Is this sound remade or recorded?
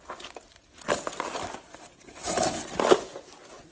recorded